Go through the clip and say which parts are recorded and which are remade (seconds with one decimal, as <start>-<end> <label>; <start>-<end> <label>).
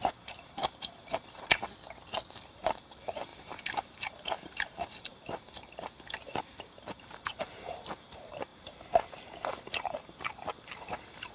0.0-1.6 remade; 1.6-2.5 recorded; 2.5-11.3 remade